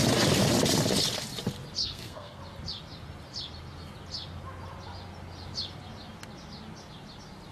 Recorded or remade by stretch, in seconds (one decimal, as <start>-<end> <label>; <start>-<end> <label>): 0.0-1.8 recorded; 1.8-2.4 remade; 2.4-7.5 recorded